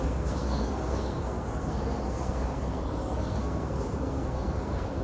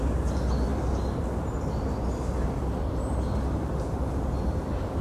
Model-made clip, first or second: first